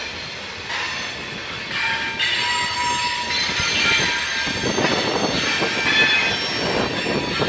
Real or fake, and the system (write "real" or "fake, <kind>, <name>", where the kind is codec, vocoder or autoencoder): real